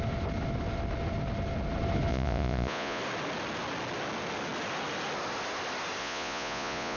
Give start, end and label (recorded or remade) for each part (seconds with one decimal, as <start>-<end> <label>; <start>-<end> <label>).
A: 0.0-2.1 recorded; 2.1-3.0 remade; 3.0-6.0 recorded; 6.0-7.0 remade

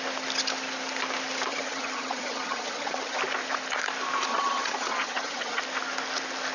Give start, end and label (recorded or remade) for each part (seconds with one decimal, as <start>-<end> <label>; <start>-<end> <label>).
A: 0.0-1.5 recorded; 1.5-3.2 remade; 3.2-4.3 recorded; 4.3-5.6 remade; 5.6-6.5 recorded